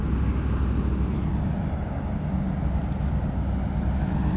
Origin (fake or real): real